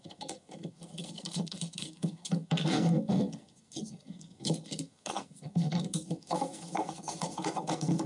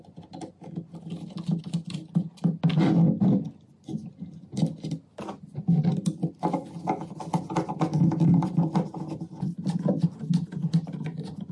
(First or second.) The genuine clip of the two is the second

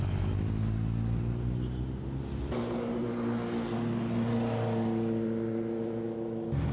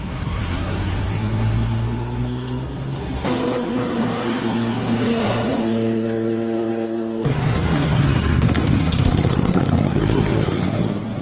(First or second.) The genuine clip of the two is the first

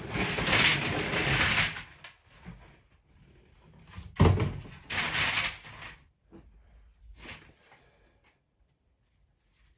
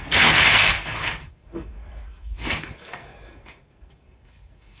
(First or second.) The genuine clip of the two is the first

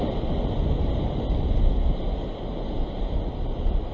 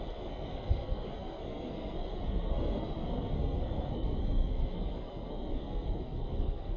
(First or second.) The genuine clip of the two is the first